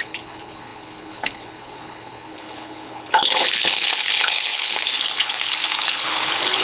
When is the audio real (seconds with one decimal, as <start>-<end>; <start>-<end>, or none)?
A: none